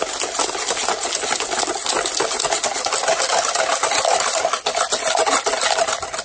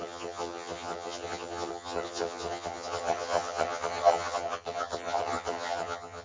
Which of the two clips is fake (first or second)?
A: second